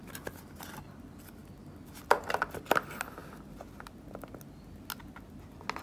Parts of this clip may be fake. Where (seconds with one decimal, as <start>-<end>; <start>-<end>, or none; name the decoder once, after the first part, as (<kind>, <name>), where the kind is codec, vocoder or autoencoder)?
none